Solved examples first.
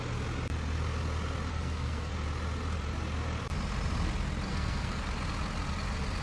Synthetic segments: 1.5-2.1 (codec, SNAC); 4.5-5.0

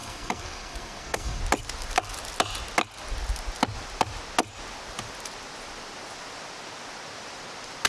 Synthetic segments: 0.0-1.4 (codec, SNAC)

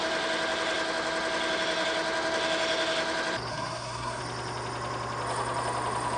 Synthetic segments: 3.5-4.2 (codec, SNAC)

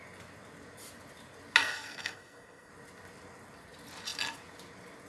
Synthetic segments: 1.6-2.7 (codec, SNAC)